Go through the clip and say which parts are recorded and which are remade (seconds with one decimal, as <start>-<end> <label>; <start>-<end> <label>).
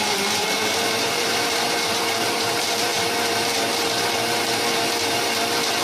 0.0-2.9 remade; 2.9-5.8 recorded